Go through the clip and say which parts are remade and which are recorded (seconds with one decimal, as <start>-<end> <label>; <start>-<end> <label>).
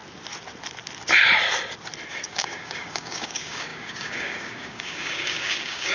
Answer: 0.0-2.1 recorded; 2.1-5.9 remade